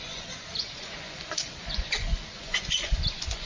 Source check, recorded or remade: remade